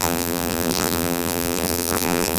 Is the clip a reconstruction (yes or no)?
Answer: yes